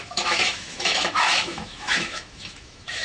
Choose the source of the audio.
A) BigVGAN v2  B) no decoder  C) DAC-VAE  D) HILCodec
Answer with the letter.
C